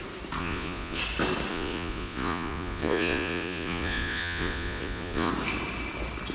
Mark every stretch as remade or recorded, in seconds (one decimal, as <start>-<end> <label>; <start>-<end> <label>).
0.0-0.4 recorded; 0.4-1.0 remade; 1.0-1.5 recorded; 1.5-5.3 remade; 5.3-6.3 recorded